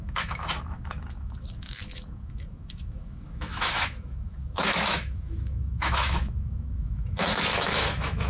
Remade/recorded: remade